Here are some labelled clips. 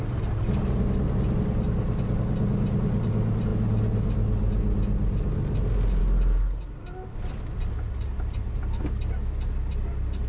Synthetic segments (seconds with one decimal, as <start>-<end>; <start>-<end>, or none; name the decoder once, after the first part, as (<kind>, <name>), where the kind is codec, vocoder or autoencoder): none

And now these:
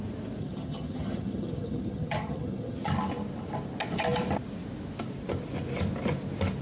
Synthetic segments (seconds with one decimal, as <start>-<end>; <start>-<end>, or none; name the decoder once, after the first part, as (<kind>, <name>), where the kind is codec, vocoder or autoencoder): 0.4-2.9 (vocoder, HiFi-GAN)

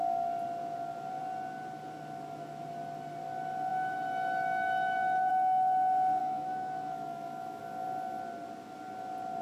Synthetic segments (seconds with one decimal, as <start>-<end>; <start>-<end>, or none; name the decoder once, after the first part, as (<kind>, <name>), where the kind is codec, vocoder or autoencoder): 6.2-7.6 (autoencoder, DAC-VAE)

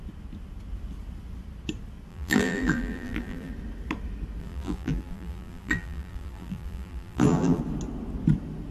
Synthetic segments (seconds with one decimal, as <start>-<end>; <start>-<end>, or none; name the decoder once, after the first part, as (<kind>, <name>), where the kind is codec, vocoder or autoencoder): 2.1-3.5 (vocoder, BigVGAN v2); 4.4-7.6

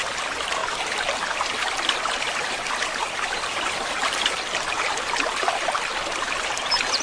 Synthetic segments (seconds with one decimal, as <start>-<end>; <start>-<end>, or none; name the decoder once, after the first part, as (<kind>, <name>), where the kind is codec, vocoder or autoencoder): none

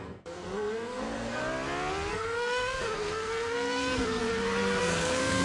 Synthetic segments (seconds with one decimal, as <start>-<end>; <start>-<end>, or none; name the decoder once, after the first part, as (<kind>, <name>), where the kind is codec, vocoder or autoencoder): 0.0-1.4 (codec, SNAC); 2.1-4.2; 4.8-5.4

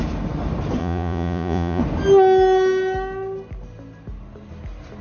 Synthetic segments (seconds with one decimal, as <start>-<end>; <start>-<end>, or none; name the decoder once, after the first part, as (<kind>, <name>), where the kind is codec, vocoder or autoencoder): 0.8-1.8 (vocoder, Vocos)

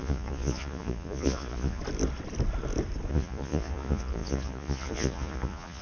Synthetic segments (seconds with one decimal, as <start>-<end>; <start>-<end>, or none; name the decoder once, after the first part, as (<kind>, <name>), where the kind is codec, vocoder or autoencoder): 0.0-1.8 (vocoder, Vocos); 3.1-5.8